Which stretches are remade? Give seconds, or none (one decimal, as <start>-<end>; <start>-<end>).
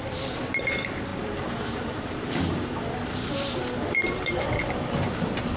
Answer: 1.1-4.4